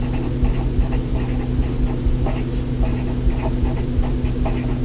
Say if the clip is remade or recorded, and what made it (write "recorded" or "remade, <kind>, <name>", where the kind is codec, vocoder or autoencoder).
recorded